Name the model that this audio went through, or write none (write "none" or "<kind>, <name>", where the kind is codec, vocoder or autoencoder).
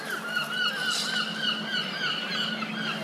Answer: none